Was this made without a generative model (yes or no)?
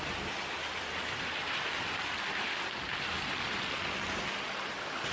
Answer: yes